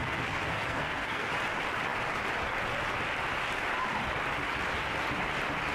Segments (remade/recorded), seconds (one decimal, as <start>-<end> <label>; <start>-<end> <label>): 0.0-1.3 remade; 1.3-5.7 recorded